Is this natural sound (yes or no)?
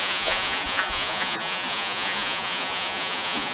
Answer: no